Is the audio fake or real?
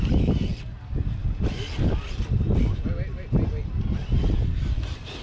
real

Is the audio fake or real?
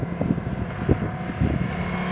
real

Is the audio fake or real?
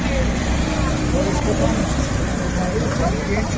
fake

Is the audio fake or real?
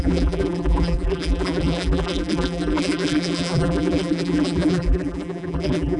fake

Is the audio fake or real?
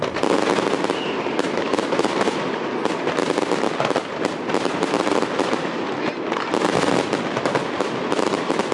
real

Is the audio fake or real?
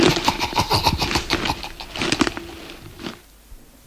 real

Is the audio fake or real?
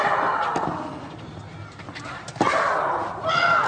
real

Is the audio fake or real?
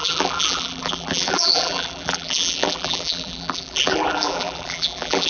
fake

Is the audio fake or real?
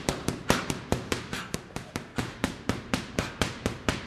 fake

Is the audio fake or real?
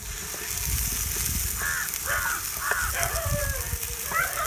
real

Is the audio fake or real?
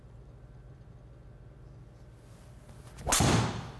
real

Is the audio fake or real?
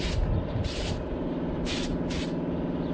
real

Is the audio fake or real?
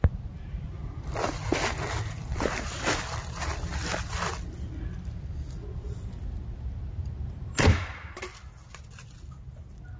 real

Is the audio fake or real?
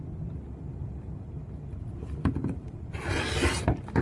real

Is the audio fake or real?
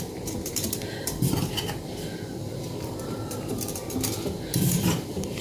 fake